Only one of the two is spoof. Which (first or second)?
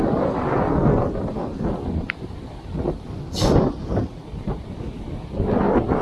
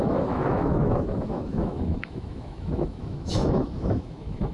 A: second